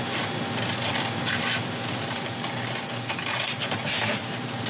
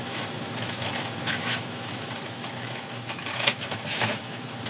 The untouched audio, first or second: first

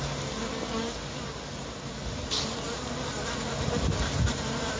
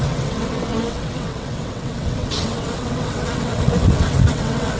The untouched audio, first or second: first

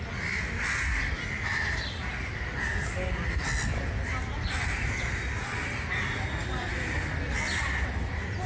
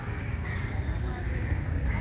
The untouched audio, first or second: first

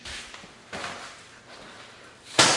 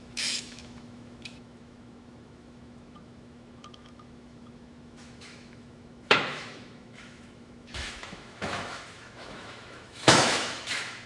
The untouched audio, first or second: first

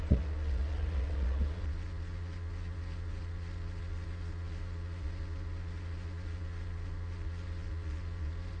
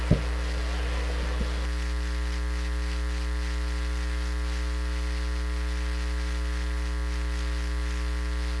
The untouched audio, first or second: second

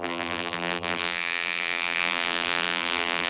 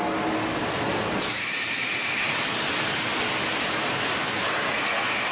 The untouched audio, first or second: second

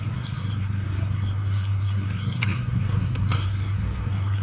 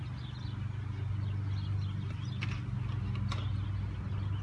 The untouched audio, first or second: second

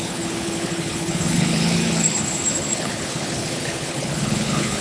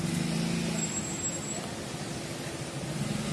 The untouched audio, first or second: second